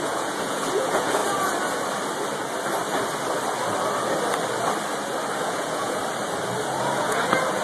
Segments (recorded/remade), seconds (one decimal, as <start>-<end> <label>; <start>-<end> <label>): 0.0-1.2 remade; 1.2-5.4 recorded; 5.4-6.0 remade; 6.0-6.8 recorded; 6.8-7.6 remade